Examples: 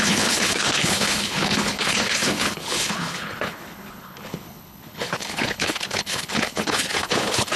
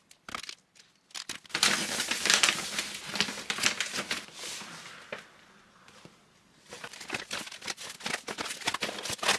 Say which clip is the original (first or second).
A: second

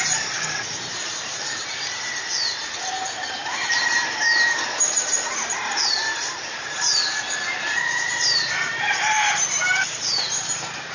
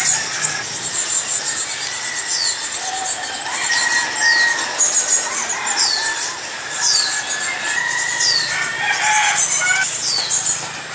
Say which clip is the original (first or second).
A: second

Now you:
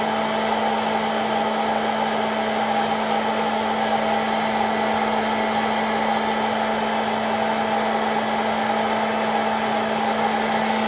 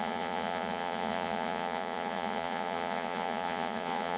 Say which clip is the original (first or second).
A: first